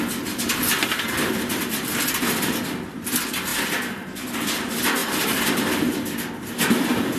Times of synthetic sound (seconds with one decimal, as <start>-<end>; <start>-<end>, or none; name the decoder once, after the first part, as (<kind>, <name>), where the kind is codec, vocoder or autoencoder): 3.5-4.1 (vocoder, BigVGAN v2)